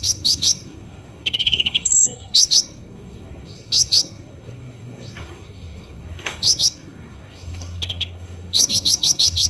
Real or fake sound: fake